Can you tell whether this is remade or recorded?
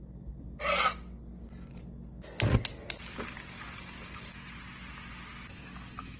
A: recorded